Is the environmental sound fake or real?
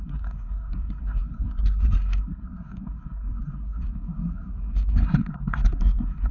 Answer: fake